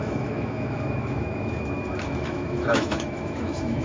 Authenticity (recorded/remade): remade